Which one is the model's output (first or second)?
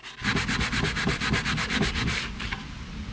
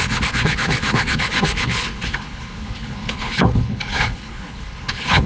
second